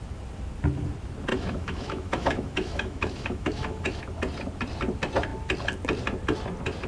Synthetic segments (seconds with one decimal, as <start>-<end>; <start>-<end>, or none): 1.3-4.0